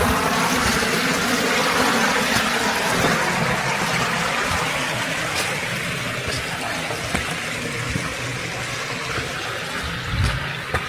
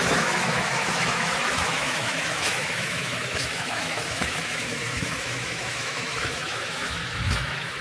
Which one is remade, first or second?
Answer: second